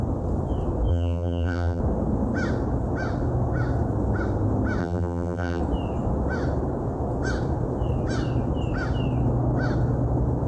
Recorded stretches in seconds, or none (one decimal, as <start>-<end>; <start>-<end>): 0.0-0.9; 1.8-4.8; 5.6-10.5